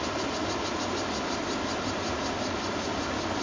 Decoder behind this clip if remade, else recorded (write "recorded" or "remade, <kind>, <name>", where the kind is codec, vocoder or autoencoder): recorded